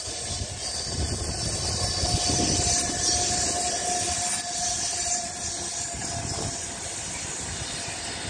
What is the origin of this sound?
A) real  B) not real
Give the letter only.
A